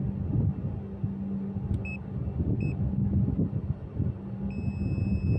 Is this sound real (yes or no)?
yes